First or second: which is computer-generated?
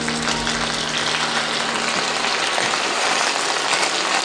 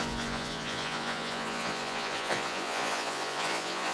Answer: second